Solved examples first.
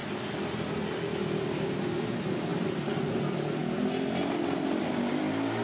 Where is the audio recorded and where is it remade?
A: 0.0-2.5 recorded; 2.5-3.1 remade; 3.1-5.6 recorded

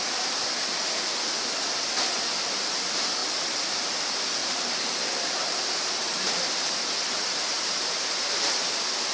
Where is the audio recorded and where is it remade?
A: 0.0-4.4 recorded; 4.4-8.5 remade; 8.5-9.1 recorded

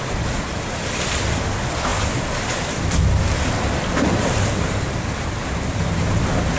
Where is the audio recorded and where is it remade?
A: 0.0-6.6 recorded